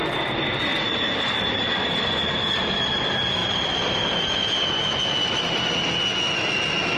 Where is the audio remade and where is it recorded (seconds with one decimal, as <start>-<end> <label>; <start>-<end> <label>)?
0.0-0.7 recorded; 0.7-1.7 remade; 1.7-3.4 recorded; 3.4-4.6 remade; 4.6-5.2 recorded; 5.2-5.7 remade; 5.7-7.0 recorded